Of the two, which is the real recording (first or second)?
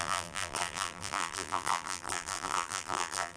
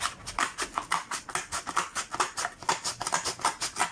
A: second